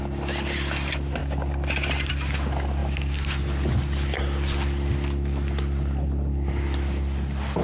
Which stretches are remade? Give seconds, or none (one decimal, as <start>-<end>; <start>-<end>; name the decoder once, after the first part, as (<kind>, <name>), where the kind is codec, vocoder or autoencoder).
none